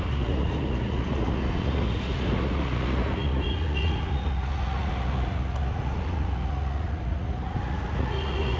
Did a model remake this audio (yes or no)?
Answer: yes